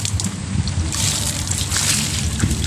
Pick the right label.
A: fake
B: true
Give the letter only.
B